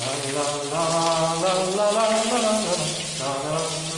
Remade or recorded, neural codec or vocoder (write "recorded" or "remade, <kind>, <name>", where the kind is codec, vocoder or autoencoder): recorded